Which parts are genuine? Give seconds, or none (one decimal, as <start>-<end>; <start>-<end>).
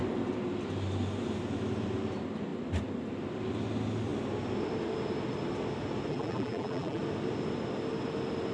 0.0-6.1; 7.0-8.5